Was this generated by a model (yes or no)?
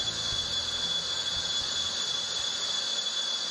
no